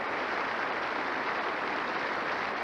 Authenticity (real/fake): fake